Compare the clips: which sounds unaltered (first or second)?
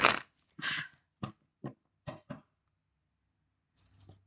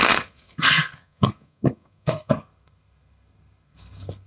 first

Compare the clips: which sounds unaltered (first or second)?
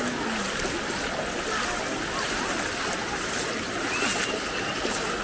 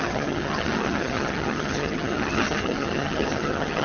first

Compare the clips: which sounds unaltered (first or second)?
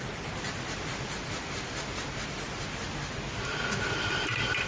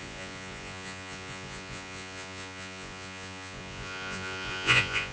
first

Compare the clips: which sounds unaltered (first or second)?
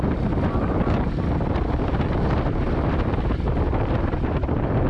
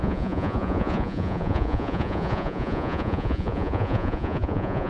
first